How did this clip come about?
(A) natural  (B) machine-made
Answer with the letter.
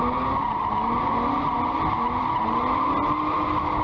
A